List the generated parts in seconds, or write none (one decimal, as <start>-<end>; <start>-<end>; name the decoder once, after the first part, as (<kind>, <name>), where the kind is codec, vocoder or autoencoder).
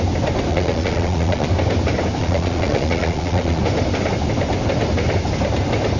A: 0.5-1.5 (vocoder, Vocos); 2.2-3.6